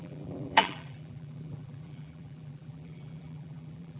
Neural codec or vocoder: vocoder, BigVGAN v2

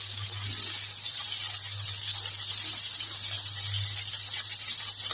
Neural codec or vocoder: none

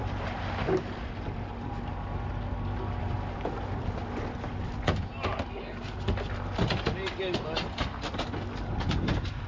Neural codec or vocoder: none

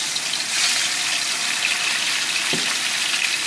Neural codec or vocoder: none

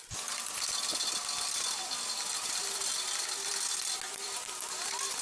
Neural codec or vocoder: none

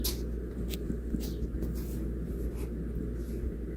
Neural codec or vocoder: none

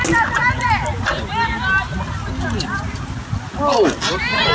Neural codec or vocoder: none